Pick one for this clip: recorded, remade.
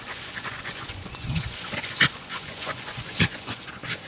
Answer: remade